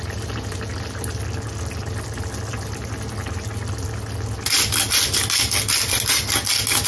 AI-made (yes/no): no